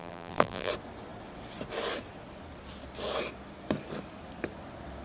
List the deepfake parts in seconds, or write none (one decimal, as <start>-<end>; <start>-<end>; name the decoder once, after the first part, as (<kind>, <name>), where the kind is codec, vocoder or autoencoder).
0.0-0.7 (vocoder, BigVGAN v2)